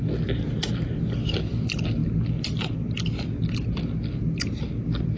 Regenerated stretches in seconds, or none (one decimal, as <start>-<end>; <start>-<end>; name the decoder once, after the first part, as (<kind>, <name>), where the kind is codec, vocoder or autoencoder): none